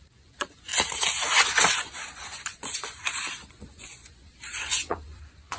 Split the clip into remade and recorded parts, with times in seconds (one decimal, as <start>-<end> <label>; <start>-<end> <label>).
0.0-0.7 remade; 0.7-2.1 recorded; 2.1-5.6 remade